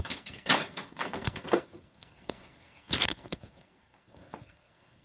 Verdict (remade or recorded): remade